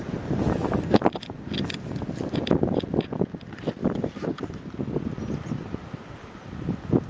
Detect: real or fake real